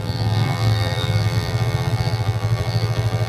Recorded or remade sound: remade